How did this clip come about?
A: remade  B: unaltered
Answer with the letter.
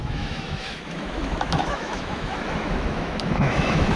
A